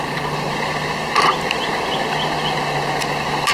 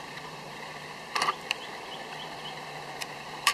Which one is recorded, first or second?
first